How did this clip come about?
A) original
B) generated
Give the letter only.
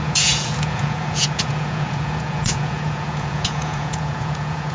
B